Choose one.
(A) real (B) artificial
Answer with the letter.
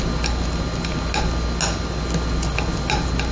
A